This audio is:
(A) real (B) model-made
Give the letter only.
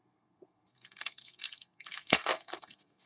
B